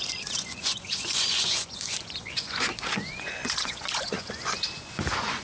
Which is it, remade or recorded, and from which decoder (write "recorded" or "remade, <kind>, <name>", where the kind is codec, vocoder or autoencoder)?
remade, vocoder, Vocos